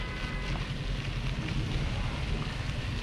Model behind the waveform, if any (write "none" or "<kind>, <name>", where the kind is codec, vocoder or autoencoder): none